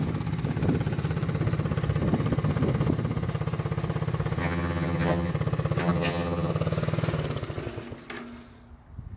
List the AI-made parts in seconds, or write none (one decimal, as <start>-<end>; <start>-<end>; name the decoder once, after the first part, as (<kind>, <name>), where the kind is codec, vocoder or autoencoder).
4.4-5.3 (vocoder, HiFi-GAN); 5.8-6.5